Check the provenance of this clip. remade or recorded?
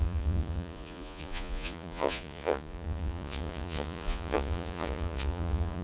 remade